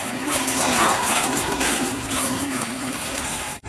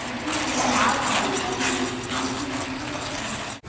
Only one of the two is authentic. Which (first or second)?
second